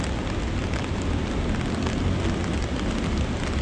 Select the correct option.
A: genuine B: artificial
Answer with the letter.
A